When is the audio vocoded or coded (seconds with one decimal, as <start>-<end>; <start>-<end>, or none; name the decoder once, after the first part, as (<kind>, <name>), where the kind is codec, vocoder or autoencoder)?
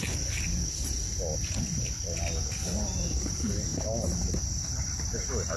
none